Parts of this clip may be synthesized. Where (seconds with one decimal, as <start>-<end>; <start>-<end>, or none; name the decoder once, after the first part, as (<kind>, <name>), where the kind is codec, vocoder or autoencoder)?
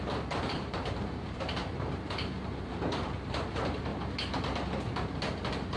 0.0-3.9 (vocoder, BigVGAN v2)